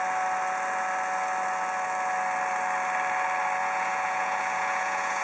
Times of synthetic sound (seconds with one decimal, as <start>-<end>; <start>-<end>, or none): 3.6-5.2